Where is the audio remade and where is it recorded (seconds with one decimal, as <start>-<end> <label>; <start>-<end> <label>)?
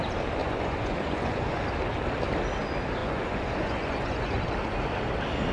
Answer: 0.0-0.4 recorded; 0.4-1.6 remade; 1.6-3.0 recorded; 3.0-4.4 remade; 4.4-5.5 recorded